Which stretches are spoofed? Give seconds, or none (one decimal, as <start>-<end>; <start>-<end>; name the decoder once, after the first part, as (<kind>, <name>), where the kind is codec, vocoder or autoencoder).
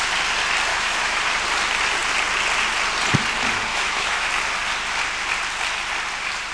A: 0.7-1.2 (autoencoder, DAC-VAE); 3.7-4.3